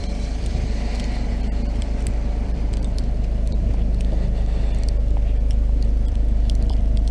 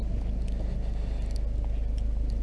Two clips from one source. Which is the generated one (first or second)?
first